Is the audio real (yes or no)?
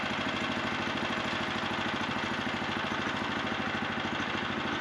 yes